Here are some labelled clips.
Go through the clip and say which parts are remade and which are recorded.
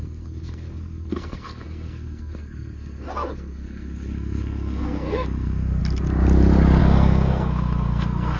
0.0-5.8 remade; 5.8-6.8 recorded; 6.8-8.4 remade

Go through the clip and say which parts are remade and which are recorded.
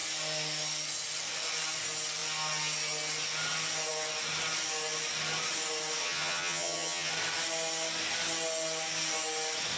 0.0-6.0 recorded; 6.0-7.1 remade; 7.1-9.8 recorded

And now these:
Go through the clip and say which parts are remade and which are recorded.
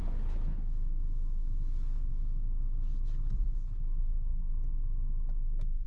0.0-4.0 recorded; 4.0-4.5 remade; 4.5-5.9 recorded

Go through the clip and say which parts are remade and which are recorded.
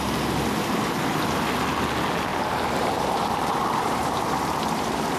0.0-2.3 recorded; 2.3-4.2 remade; 4.2-5.2 recorded